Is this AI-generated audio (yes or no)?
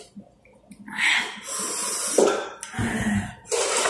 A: no